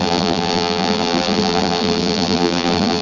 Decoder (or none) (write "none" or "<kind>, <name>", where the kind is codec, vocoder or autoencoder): vocoder, BigVGAN v2